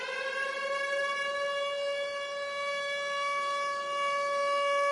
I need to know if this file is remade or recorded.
recorded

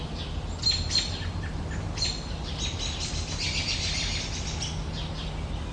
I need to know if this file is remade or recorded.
recorded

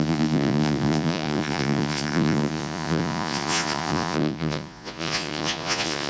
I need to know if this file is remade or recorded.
remade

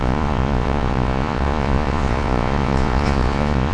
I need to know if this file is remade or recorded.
remade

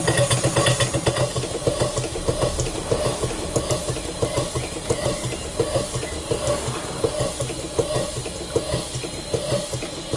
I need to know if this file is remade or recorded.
recorded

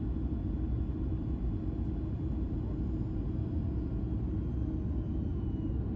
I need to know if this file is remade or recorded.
recorded